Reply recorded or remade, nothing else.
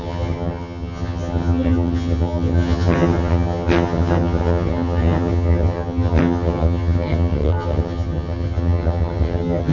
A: remade